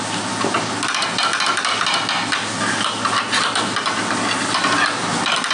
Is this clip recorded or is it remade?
recorded